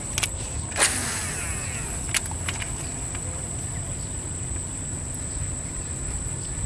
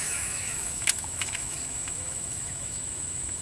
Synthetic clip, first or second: second